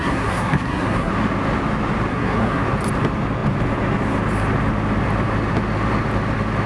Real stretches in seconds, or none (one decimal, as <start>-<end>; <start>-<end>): 1.1-2.1; 2.6-6.7